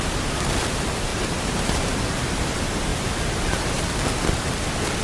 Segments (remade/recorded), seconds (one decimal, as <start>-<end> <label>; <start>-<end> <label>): 0.0-1.1 recorded; 1.1-2.4 remade; 2.4-2.9 recorded; 2.9-3.8 remade; 3.8-5.0 recorded